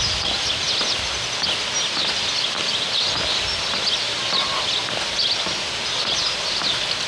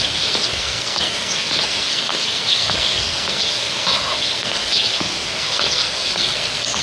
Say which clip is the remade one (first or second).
second